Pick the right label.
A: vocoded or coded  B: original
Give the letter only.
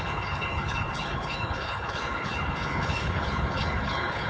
A